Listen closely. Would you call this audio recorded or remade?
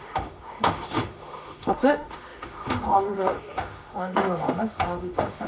remade